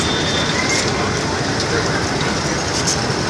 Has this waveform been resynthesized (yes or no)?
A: no